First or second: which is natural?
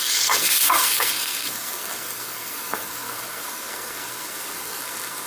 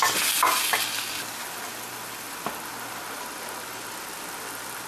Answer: second